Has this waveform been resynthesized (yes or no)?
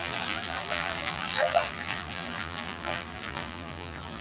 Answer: yes